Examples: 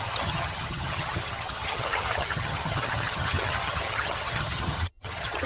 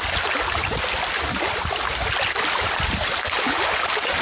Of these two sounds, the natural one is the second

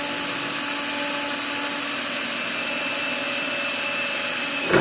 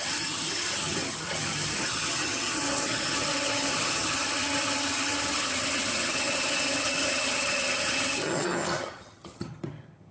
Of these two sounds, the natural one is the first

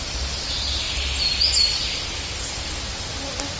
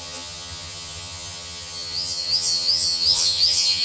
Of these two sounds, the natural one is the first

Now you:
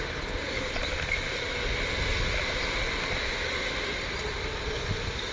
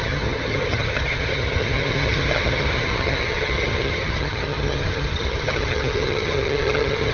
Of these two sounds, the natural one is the first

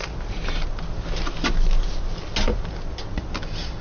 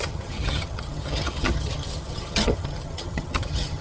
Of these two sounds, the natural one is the first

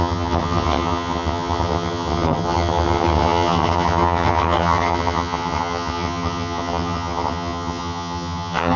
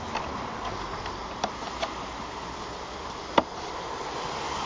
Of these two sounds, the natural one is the second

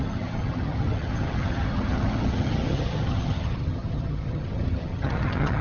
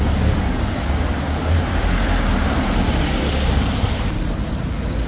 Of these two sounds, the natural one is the second